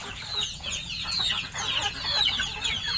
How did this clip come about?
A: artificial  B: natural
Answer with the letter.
A